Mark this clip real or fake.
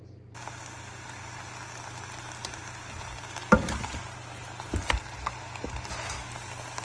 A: real